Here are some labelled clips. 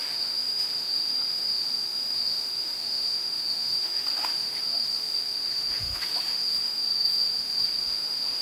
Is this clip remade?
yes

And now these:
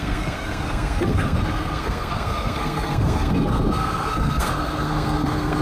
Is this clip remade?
yes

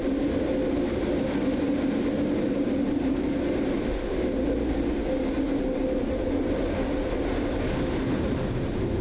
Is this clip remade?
no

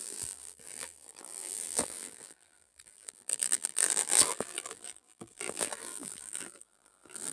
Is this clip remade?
yes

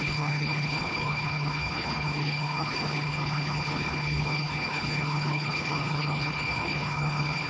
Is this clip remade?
yes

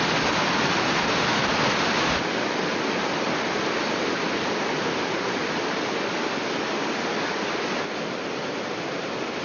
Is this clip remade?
no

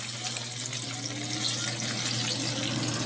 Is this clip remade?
no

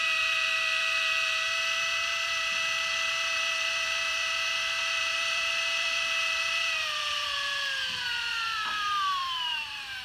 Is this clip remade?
yes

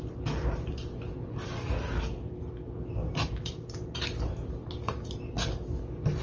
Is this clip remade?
no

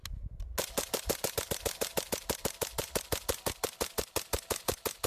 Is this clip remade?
no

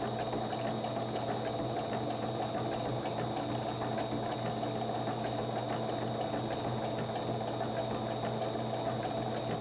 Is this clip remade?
no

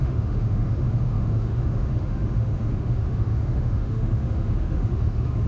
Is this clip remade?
yes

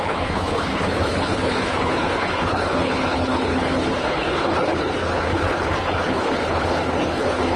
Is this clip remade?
yes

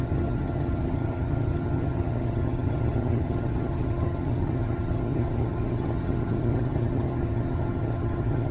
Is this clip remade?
yes